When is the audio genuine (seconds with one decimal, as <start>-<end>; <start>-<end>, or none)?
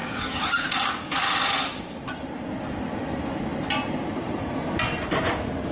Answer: 1.2-5.7